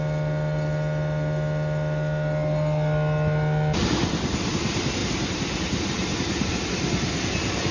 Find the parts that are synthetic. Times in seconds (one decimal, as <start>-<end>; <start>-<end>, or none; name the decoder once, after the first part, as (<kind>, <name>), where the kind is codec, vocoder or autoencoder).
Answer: none